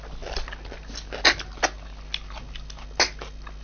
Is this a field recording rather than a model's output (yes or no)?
yes